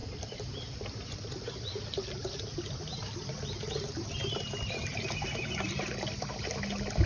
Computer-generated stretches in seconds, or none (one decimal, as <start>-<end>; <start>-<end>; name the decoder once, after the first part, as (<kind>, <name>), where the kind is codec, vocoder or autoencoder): none